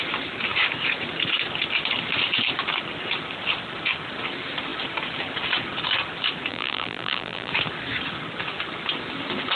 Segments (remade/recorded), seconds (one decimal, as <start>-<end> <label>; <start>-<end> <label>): 0.0-6.5 recorded; 6.5-7.5 remade; 7.5-9.6 recorded